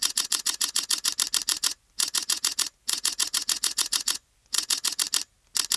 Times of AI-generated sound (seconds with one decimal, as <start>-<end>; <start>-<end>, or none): 0.0-1.1; 1.5-5.0

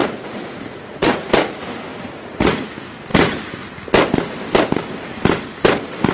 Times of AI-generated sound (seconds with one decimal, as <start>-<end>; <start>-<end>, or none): 0.0-1.3; 1.9-2.7

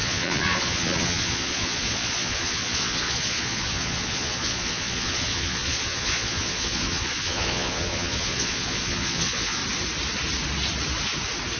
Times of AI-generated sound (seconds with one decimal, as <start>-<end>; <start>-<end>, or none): 0.0-9.6

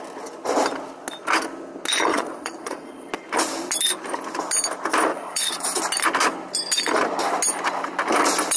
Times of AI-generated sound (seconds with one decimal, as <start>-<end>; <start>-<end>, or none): 2.1-3.1; 5.1-5.8

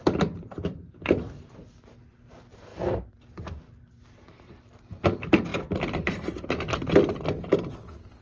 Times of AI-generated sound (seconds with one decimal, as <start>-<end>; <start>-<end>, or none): none

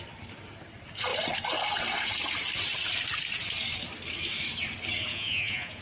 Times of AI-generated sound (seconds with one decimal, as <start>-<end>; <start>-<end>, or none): 5.1-5.8